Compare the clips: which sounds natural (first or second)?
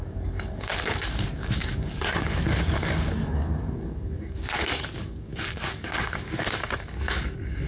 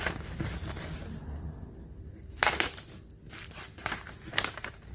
second